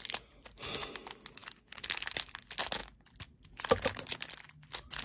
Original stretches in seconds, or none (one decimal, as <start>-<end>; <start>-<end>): 0.0-2.8; 4.3-5.0